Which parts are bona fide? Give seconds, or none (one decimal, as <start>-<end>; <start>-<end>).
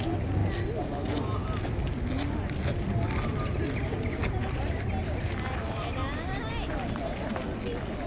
0.0-8.1